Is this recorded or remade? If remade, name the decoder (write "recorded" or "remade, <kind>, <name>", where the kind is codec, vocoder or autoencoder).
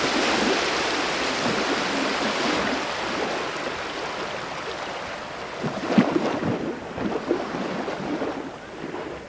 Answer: recorded